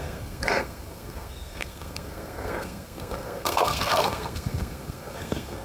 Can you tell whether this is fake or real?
fake